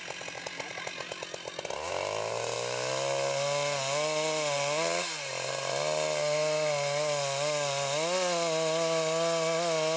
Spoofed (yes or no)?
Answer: no